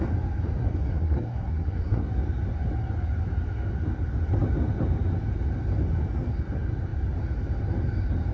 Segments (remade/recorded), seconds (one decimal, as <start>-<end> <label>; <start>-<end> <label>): 0.0-0.6 recorded; 0.6-2.1 remade; 2.1-8.3 recorded